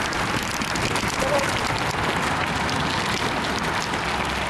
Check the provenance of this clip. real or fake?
real